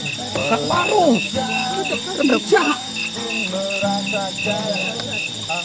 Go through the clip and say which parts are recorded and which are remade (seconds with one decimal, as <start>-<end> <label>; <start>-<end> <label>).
0.0-0.4 recorded; 0.4-1.7 remade; 1.7-2.3 recorded; 2.3-3.0 remade; 3.0-5.6 recorded